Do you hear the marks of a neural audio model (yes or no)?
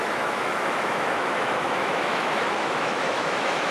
yes